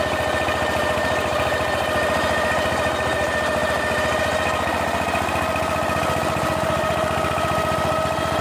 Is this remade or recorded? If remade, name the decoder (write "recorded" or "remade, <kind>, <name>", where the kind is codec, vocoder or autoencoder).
recorded